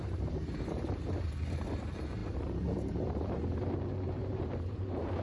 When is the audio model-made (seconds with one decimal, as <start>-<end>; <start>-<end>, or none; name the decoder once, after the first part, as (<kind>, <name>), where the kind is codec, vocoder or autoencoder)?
0.0-5.2 (vocoder, BigVGAN v2)